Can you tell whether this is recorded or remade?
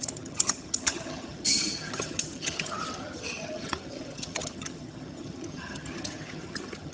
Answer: remade